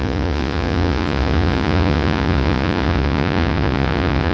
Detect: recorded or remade remade